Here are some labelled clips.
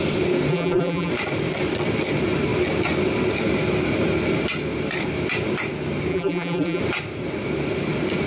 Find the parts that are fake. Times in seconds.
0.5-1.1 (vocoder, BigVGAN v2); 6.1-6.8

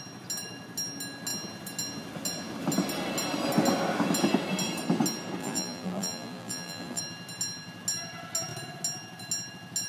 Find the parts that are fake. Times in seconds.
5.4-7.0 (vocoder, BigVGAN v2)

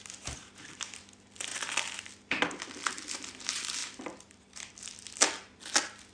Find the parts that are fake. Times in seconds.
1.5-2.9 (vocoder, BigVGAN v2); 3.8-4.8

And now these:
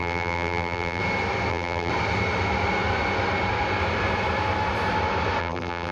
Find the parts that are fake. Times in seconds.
0.0-1.0 (vocoder, BigVGAN v2); 1.5-1.9; 5.4-5.9

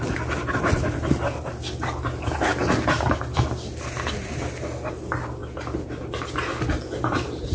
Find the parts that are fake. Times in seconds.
5.4-6.2 (vocoder, BigVGAN v2)

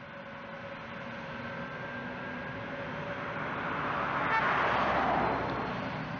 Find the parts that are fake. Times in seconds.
none

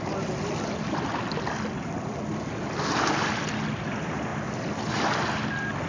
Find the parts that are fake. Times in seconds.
none